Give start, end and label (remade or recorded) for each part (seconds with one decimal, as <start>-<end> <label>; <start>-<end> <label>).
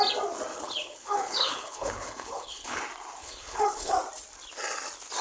0.0-0.5 recorded; 0.5-2.8 remade; 2.8-3.2 recorded; 3.2-3.9 remade; 3.9-5.2 recorded